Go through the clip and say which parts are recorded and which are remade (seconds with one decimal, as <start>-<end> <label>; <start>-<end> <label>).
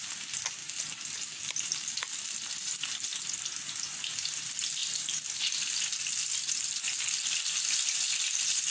0.0-8.7 recorded